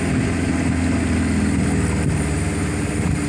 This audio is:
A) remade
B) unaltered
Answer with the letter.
B